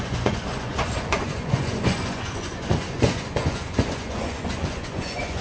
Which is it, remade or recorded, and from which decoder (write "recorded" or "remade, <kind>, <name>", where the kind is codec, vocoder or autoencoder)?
remade, vocoder, Vocos